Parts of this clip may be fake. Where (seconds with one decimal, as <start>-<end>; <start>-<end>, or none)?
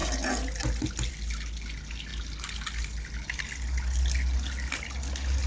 none